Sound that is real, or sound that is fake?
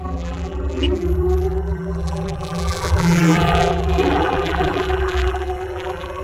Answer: fake